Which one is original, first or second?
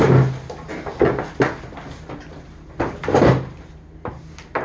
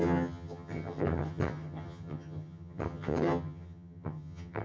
first